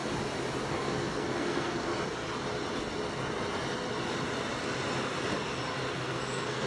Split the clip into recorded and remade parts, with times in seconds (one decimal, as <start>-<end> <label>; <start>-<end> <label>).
0.0-0.7 recorded; 0.7-1.9 remade; 1.9-5.9 recorded; 5.9-6.7 remade